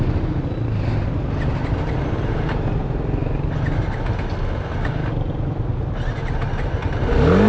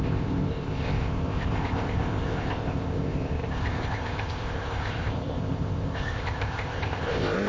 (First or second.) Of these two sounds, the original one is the first